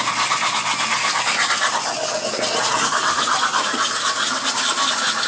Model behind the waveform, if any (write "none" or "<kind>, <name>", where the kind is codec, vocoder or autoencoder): none